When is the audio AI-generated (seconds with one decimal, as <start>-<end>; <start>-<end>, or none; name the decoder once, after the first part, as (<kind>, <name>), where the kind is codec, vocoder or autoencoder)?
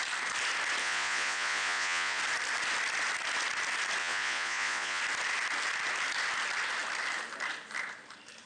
0.8-2.2 (vocoder, Vocos); 4.0-5.0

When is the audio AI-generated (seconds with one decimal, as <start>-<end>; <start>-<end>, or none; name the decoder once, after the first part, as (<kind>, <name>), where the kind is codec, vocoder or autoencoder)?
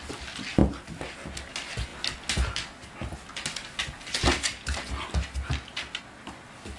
none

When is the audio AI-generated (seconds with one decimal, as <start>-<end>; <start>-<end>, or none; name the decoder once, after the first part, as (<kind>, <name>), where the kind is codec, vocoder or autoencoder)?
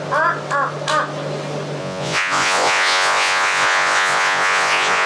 1.8-5.1 (vocoder, Vocos)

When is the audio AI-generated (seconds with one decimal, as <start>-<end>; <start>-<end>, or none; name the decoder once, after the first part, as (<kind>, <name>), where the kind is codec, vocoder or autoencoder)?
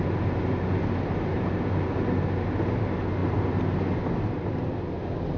none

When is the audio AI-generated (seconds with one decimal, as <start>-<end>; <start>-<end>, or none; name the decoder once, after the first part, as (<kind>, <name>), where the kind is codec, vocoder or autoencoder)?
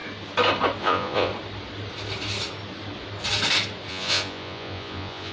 0.8-1.3 (vocoder, Vocos); 3.9-5.3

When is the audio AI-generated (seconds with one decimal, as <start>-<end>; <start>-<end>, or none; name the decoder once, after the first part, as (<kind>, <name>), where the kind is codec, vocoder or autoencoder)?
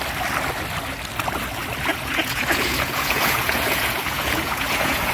1.9-5.1 (vocoder, Vocos)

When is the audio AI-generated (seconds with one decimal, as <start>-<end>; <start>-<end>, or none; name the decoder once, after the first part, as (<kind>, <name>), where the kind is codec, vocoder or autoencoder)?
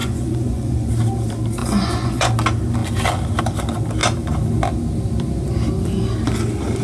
0.0-0.9 (vocoder, Vocos); 1.6-2.3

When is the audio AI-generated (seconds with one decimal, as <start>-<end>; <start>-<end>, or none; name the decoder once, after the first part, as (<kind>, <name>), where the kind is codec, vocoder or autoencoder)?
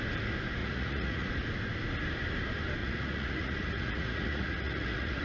0.6-1.3 (vocoder, Vocos); 2.8-5.2